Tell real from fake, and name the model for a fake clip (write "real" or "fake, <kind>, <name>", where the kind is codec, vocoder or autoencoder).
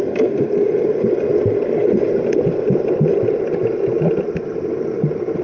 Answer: real